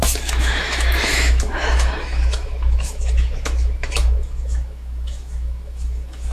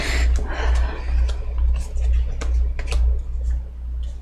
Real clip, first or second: second